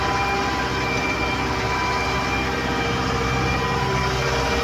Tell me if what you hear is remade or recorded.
recorded